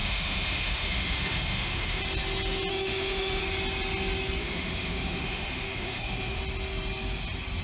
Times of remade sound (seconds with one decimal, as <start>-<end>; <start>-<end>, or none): 0.0-2.0; 2.7-3.4; 4.4-6.4